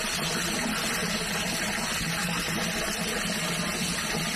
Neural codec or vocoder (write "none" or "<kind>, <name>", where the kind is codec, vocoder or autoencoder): none